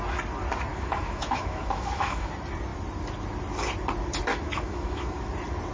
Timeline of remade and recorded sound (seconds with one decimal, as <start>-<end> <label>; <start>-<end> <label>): 0.0-0.7 recorded; 0.7-2.3 remade; 2.3-4.3 recorded; 4.3-5.3 remade; 5.3-5.7 recorded